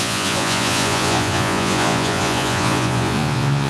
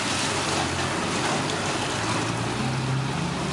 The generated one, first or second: first